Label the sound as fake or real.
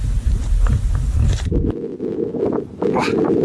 real